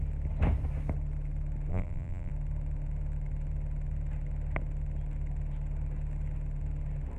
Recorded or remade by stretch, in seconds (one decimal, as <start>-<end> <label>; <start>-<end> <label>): 0.0-1.7 recorded; 1.7-2.3 remade; 2.3-7.2 recorded